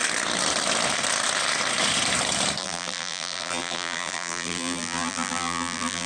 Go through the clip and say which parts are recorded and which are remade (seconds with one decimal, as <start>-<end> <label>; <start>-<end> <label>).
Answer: 0.0-2.6 recorded; 2.6-6.1 remade